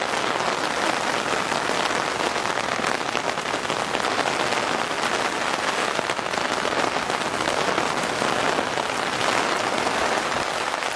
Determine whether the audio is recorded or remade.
recorded